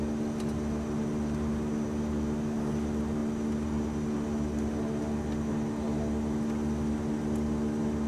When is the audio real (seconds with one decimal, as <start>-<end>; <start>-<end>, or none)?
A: 0.0-8.1